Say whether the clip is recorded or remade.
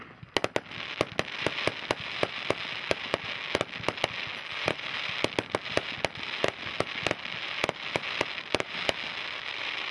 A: recorded